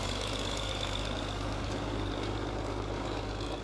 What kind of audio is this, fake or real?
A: fake